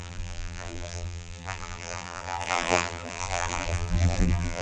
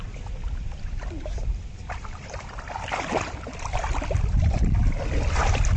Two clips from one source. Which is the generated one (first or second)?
first